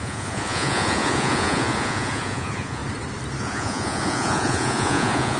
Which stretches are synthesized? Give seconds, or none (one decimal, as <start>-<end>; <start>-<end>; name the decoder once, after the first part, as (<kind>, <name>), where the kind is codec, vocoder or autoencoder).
0.0-2.8 (vocoder, Vocos); 3.4-5.4